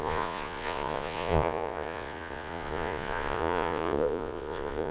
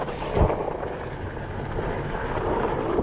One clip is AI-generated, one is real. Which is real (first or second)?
second